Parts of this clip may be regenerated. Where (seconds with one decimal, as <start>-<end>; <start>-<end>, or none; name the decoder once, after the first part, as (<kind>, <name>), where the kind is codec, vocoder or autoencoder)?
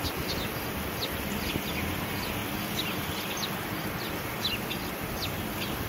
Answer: none